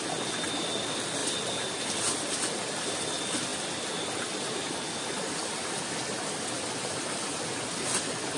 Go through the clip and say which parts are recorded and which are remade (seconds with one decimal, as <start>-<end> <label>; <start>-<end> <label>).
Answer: 0.0-1.2 recorded; 1.2-2.3 remade; 2.3-8.4 recorded